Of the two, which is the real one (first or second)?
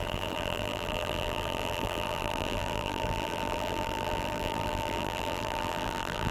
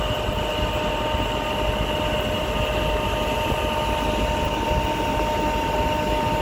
second